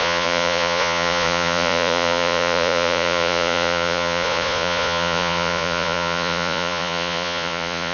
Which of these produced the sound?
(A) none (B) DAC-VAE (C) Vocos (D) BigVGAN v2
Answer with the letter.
C